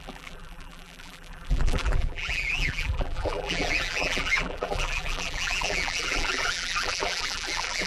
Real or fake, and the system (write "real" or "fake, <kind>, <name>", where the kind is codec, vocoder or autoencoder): fake, vocoder, BigVGAN v2